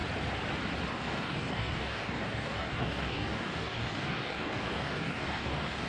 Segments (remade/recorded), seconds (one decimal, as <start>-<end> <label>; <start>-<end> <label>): 0.0-0.9 recorded; 0.9-5.9 remade